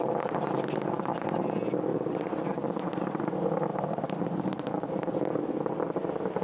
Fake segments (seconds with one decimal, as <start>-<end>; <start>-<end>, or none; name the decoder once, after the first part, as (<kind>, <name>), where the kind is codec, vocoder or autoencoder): 3.7-5.6 (vocoder, BigVGAN v2)